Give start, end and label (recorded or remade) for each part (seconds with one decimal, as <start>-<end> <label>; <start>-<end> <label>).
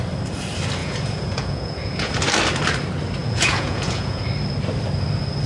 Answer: 0.0-0.8 recorded; 0.8-2.1 remade; 2.1-3.2 recorded; 3.2-4.2 remade; 4.2-5.5 recorded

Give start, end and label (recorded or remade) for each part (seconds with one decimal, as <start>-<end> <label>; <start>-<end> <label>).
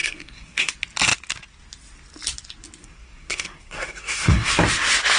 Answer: 0.0-0.7 remade; 0.7-2.8 recorded; 2.8-4.5 remade; 4.5-5.2 recorded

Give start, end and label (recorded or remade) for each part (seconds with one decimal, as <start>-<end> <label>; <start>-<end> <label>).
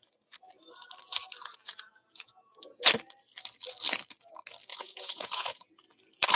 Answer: 0.0-1.6 recorded; 1.6-2.8 remade; 2.8-4.7 recorded; 4.7-5.7 remade; 5.7-6.4 recorded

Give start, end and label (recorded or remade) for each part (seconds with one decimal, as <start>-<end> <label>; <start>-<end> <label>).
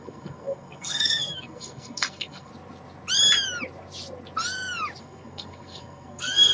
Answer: 0.0-2.5 remade; 2.5-5.0 recorded; 5.0-6.5 remade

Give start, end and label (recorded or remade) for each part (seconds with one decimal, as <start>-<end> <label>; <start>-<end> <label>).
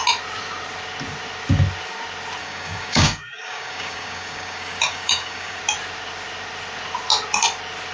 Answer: 0.0-2.4 recorded; 2.4-5.6 remade; 5.6-7.9 recorded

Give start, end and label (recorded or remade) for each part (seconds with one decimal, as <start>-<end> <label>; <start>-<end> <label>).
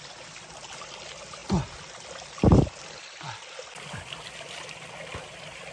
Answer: 0.0-5.7 recorded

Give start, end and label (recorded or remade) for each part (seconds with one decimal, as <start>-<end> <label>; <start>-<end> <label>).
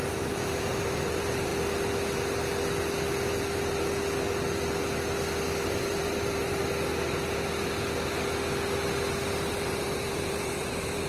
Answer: 0.0-1.5 remade; 1.5-5.8 recorded; 5.8-6.6 remade; 6.6-9.5 recorded; 9.5-11.1 remade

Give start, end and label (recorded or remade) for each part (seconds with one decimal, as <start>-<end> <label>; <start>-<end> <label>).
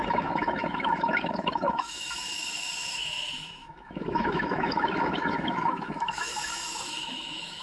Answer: 0.0-7.6 remade